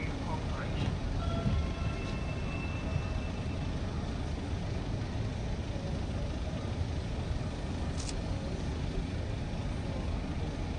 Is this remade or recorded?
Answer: recorded